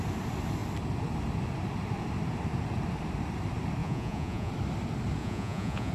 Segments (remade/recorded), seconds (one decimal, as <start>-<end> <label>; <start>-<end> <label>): 0.0-3.8 recorded; 3.8-4.5 remade; 4.5-5.2 recorded; 5.2-5.9 remade